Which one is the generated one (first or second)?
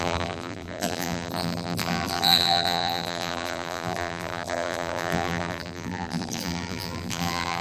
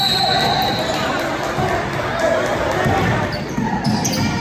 first